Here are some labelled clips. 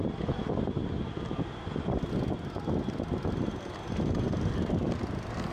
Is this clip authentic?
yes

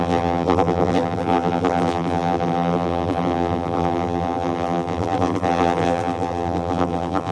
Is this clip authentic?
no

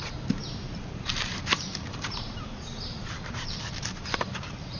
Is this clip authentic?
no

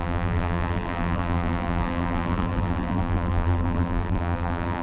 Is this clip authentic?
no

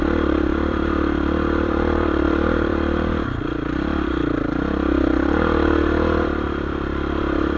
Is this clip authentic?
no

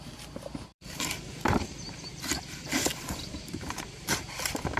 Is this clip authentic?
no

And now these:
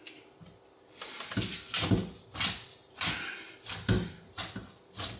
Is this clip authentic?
yes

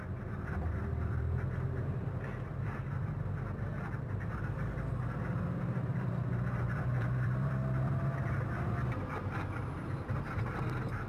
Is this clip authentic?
no